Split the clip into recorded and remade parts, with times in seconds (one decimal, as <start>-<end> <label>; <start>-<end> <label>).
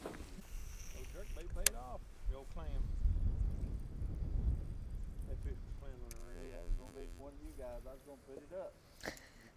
0.0-6.2 recorded; 6.2-7.2 remade; 7.2-9.6 recorded